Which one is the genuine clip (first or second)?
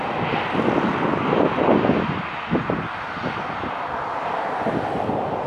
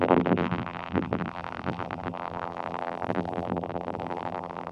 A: first